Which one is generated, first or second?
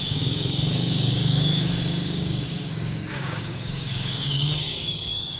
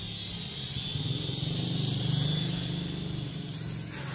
first